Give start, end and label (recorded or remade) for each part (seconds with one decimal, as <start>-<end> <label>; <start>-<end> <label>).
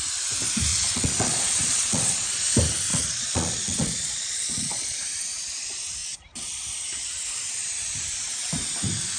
0.0-0.7 recorded; 0.7-2.4 remade; 2.4-2.9 recorded; 2.9-5.0 remade; 5.0-9.2 recorded